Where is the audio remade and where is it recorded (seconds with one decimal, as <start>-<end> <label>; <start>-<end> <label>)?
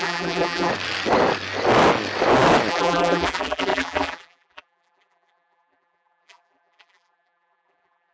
0.0-0.7 remade; 0.7-2.7 recorded; 2.7-8.1 remade